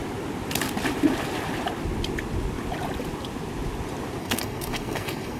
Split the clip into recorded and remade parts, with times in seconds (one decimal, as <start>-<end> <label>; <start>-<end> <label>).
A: 0.0-4.2 recorded; 4.2-5.4 remade